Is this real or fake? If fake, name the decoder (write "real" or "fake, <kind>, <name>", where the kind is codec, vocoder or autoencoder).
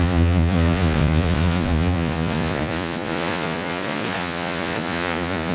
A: fake, vocoder, Vocos